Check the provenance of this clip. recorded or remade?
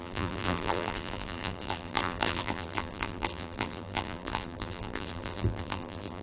remade